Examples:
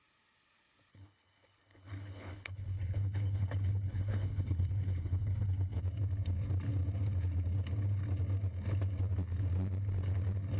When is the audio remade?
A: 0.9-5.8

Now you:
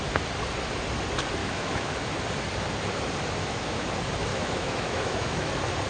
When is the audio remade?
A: 1.4-1.9; 3.4-3.9; 4.3-5.5

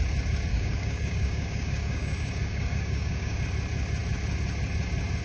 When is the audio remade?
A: 0.5-3.4

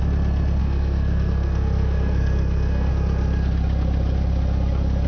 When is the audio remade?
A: 0.6-2.9

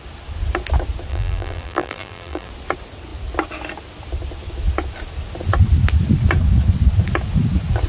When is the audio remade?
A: 1.1-2.5

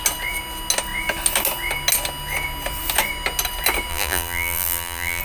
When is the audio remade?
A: 3.9-5.2

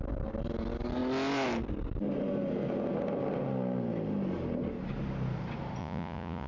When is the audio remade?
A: 5.8-6.5